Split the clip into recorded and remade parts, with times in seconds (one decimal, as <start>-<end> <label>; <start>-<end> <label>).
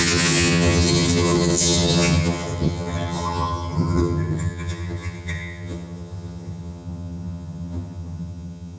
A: 0.0-8.8 remade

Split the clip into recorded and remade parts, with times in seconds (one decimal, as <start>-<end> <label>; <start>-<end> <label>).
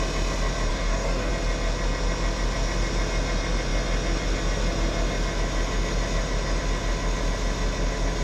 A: 0.0-0.7 recorded; 0.7-1.3 remade; 1.3-8.2 recorded